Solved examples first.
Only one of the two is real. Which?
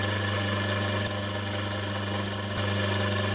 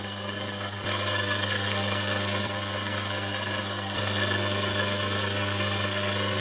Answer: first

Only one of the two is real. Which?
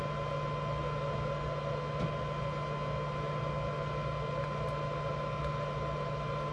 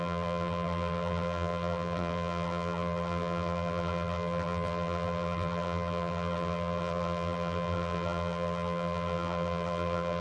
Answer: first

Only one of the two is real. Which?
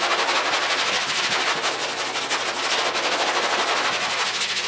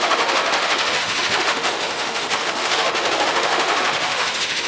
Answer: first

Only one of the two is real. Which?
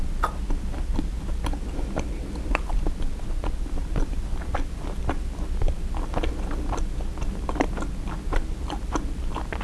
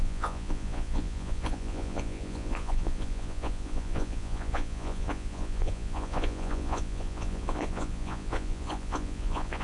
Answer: first